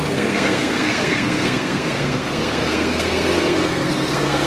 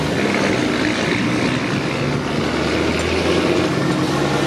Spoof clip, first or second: first